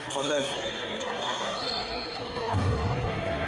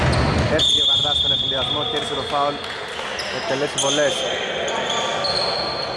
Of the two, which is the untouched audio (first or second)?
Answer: second